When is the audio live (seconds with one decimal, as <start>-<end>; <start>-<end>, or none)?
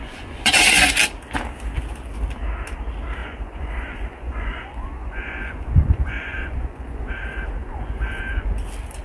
0.9-3.2; 7.1-7.6; 8.5-9.0